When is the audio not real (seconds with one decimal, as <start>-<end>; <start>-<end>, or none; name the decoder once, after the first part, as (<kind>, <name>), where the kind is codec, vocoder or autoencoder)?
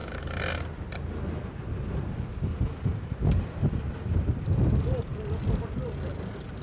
none